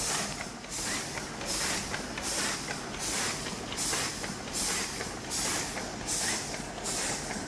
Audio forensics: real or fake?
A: real